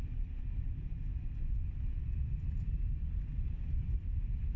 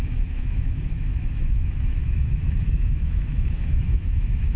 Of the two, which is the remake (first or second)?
second